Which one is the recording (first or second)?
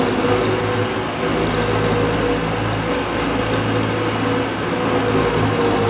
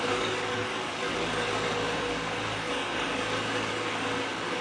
first